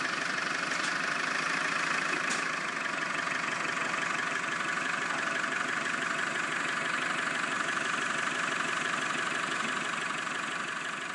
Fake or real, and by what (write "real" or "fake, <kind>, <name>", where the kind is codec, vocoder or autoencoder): real